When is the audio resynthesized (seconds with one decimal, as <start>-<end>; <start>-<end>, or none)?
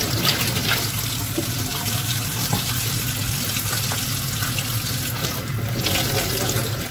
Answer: 1.7-3.1; 5.2-5.8